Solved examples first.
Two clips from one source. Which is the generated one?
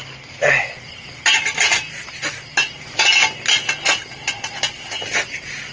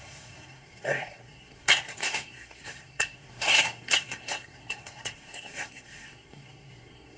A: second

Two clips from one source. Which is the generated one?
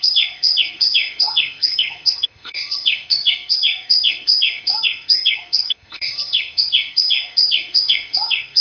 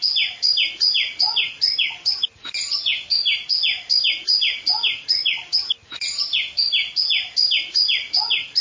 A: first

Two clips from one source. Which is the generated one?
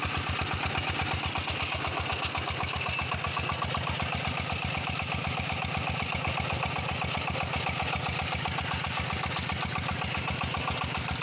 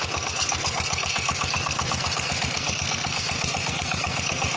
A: second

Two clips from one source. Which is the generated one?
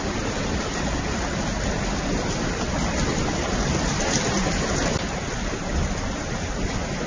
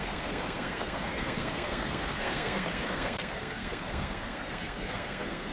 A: second